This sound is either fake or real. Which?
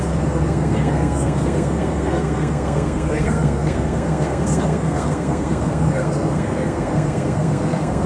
fake